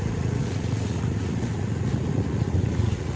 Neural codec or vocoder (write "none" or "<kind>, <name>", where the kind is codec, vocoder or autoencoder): vocoder, Vocos